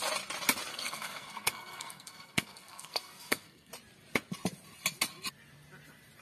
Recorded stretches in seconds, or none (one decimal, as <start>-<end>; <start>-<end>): 0.0-0.7; 3.7-6.2